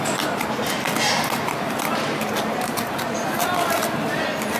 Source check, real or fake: real